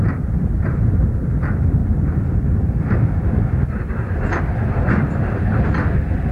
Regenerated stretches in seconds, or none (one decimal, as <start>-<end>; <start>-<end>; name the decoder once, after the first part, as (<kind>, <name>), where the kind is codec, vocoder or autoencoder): 1.8-4.4 (vocoder, BigVGAN v2)